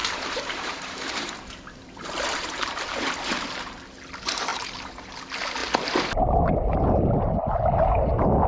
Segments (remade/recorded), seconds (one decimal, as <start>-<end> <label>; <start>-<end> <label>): 0.0-3.8 remade; 3.8-4.5 recorded; 4.5-5.1 remade; 5.1-8.5 recorded